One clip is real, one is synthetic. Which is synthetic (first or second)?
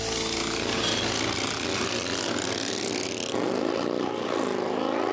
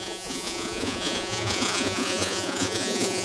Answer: second